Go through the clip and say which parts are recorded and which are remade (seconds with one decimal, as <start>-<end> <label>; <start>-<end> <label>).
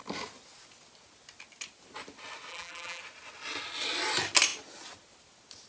0.0-2.5 recorded; 2.5-3.0 remade; 3.0-5.7 recorded